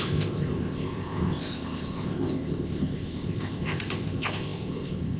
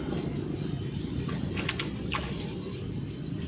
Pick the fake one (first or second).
first